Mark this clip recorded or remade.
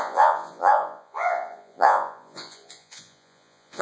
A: remade